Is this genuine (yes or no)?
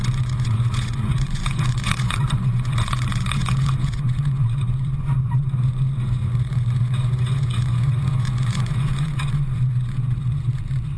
no